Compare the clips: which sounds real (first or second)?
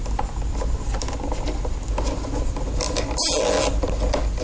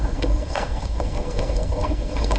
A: first